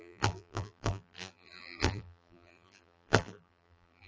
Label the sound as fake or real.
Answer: fake